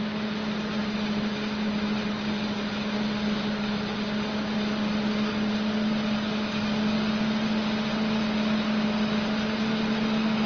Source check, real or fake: real